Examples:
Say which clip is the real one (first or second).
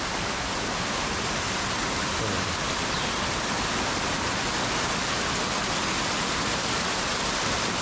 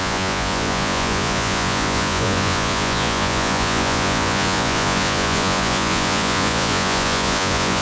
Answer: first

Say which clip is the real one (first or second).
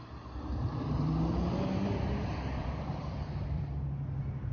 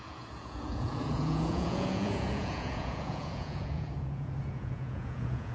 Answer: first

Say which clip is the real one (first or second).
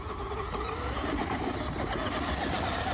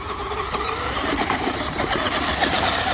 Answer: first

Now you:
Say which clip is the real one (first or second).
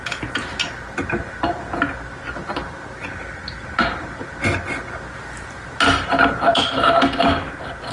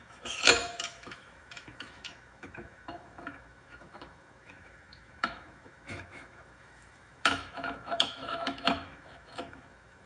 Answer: first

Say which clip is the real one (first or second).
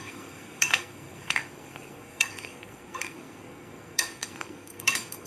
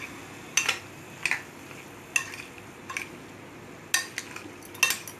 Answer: second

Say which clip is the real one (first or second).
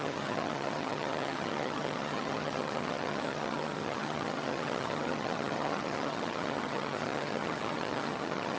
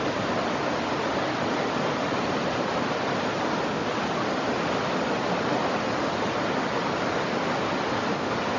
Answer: second